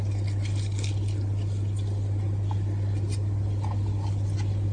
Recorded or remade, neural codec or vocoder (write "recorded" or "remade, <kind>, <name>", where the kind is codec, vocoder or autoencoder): recorded